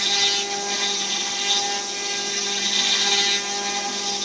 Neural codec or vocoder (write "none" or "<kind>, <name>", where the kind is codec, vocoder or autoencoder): none